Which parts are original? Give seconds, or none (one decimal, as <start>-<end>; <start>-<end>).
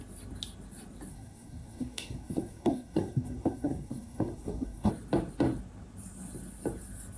0.0-1.1; 4.9-7.2